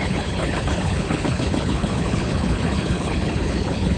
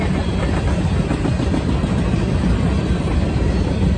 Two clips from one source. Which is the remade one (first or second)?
first